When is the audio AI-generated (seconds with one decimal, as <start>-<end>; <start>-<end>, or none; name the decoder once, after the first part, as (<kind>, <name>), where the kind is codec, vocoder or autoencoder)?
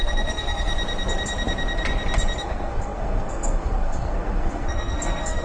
0.0-0.7 (codec, SNAC); 2.4-5.4